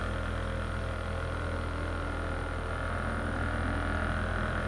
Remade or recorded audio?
recorded